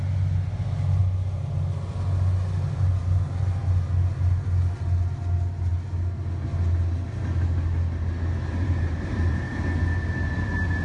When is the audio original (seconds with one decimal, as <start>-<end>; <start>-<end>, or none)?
0.0-8.6; 9.5-10.8